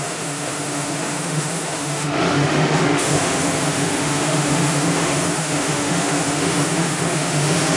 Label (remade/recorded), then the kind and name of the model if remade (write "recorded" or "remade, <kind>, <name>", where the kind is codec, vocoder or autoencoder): remade, autoencoder, DAC-VAE